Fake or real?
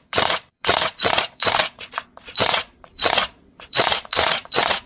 fake